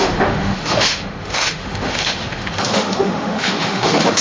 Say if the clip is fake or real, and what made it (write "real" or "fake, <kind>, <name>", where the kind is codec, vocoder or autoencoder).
fake, autoencoder, DAC-VAE